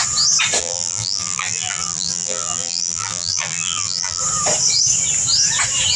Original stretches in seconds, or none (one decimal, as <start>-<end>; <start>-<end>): 0.0-0.6; 4.2-6.0